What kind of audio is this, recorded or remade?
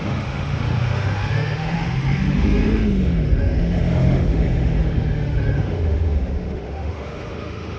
remade